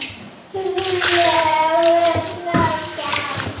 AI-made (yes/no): yes